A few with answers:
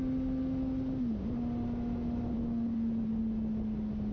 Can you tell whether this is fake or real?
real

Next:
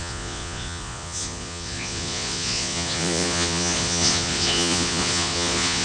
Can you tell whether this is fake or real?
fake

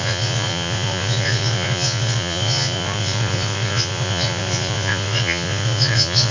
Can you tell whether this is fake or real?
fake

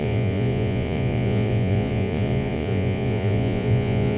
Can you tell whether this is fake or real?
fake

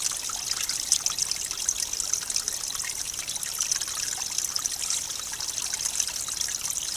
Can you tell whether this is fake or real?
real